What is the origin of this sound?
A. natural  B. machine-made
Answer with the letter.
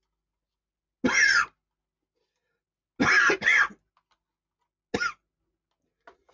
A